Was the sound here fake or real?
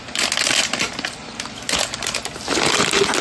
real